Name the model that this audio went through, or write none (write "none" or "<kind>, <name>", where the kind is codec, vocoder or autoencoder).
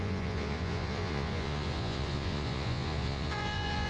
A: vocoder, Vocos